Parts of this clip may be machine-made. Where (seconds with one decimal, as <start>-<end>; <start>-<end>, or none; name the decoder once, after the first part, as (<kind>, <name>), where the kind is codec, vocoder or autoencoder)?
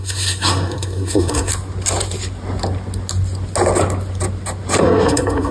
0.0-1.5 (codec, SNAC); 4.8-5.5